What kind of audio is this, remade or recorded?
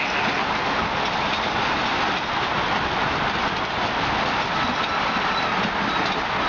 recorded